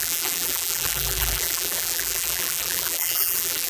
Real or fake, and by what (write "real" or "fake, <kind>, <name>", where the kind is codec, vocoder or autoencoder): fake, vocoder, BigVGAN v2